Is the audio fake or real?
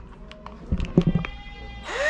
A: real